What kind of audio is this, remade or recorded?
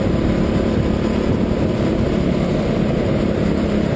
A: recorded